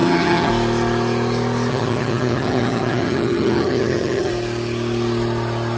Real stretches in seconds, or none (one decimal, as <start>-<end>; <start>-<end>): 0.5-1.7; 4.3-5.8